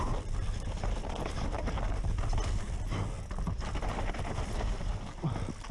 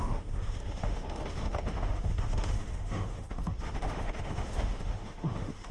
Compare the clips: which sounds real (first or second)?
first